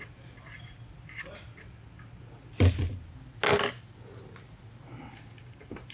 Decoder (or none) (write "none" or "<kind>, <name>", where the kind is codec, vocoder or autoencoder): none